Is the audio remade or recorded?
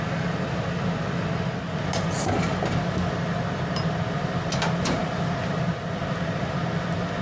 recorded